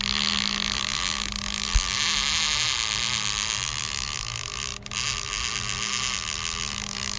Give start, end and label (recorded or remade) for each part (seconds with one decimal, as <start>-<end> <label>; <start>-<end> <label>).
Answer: 0.0-7.2 recorded